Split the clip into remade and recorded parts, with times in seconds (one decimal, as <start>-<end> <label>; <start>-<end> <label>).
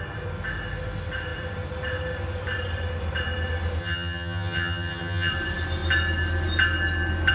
0.0-3.8 recorded; 3.8-5.3 remade; 5.3-7.3 recorded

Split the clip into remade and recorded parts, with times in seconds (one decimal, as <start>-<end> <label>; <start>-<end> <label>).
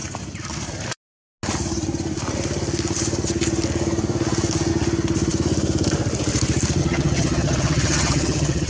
0.0-6.8 recorded; 6.8-8.7 remade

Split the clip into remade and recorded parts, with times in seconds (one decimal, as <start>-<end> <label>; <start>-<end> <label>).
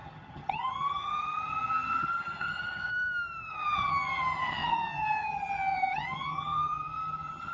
0.0-2.9 remade; 2.9-3.5 recorded; 3.5-7.5 remade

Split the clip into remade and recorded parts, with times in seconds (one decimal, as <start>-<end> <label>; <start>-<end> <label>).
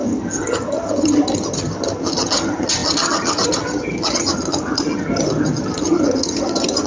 0.0-6.9 remade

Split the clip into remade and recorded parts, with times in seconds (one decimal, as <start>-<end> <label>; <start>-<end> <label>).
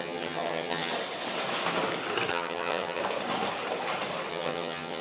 0.0-0.9 remade; 0.9-2.3 recorded; 2.3-3.0 remade; 3.0-4.3 recorded; 4.3-5.0 remade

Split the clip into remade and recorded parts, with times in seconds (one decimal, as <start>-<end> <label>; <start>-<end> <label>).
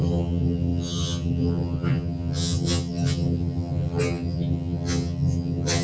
0.0-5.8 remade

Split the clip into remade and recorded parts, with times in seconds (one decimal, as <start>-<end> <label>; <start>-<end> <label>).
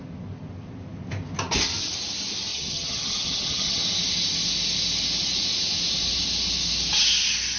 0.0-2.5 recorded; 2.5-3.8 remade; 3.8-7.6 recorded